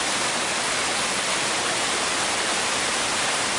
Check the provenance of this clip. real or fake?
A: real